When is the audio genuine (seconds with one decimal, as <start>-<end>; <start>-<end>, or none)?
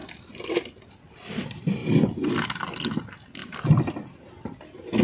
0.0-5.0